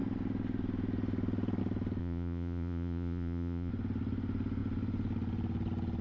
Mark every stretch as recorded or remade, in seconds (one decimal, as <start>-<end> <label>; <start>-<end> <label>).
0.0-2.0 recorded; 2.0-3.7 remade; 3.7-6.0 recorded